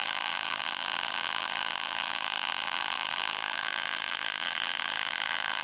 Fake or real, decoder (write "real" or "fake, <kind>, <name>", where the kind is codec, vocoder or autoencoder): fake, vocoder, BigVGAN v2